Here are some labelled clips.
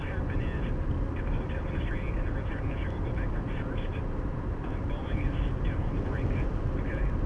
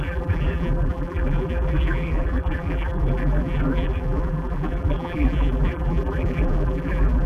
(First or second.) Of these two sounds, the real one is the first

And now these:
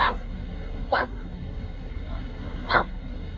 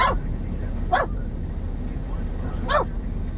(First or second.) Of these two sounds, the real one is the second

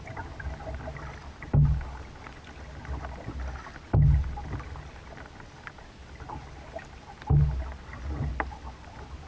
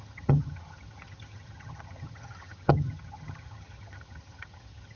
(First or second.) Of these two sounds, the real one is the first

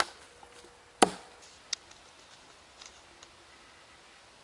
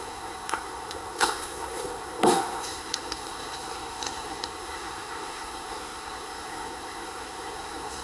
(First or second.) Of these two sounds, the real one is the first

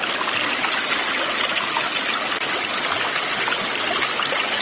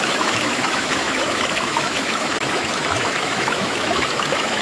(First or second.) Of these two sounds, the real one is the first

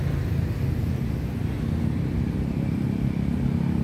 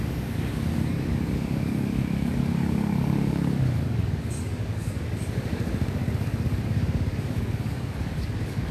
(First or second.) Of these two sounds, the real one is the first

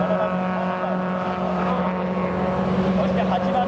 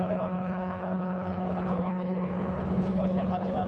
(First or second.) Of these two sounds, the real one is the first